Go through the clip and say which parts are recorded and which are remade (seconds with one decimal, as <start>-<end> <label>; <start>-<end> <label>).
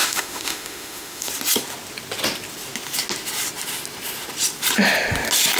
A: 0.0-1.3 remade; 1.3-5.6 recorded